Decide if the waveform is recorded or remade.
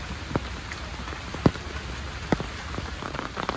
recorded